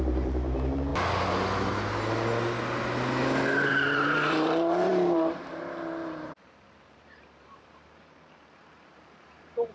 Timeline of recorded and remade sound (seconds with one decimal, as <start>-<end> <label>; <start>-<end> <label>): 0.0-0.9 remade; 0.9-3.7 recorded; 3.7-9.7 remade